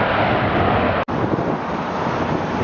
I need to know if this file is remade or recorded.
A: recorded